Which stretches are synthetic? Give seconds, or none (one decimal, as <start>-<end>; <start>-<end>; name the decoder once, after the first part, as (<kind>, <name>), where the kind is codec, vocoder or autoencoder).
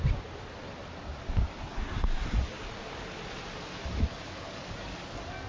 none